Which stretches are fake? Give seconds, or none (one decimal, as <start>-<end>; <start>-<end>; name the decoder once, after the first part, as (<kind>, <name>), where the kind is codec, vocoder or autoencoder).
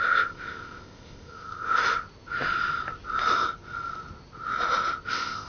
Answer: 0.0-1.8 (codec, ZipCodec); 5.1-5.5